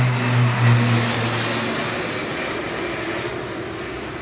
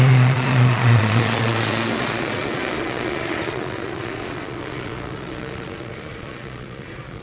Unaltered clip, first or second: first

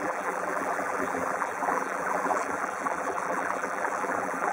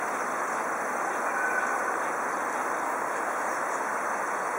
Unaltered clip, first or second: second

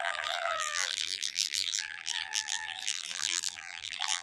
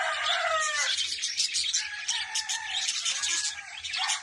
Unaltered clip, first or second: second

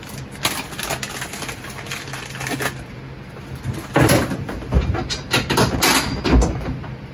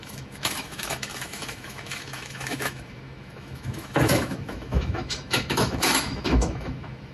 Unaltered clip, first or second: first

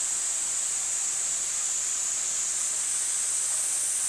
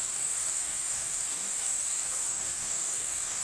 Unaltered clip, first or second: first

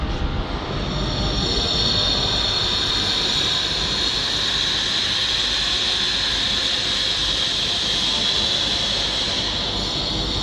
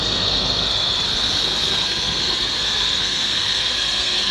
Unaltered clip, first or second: first